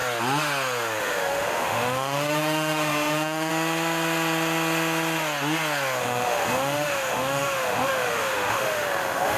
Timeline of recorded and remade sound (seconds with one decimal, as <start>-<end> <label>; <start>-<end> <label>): 0.0-1.0 recorded; 1.0-3.5 remade; 3.5-6.0 recorded; 6.0-9.4 remade